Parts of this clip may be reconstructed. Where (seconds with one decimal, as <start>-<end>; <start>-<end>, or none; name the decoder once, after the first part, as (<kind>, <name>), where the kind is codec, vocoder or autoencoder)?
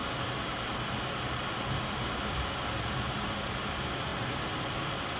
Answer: none